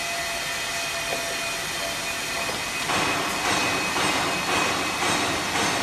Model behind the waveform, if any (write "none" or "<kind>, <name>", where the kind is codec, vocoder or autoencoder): none